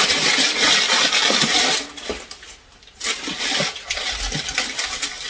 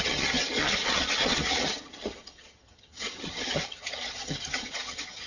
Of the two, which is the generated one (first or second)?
second